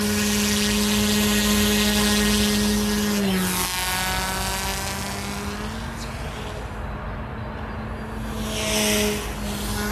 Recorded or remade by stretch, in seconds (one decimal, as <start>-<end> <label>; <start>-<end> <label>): 0.0-9.9 recorded